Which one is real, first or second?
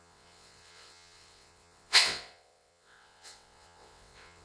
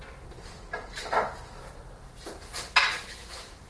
second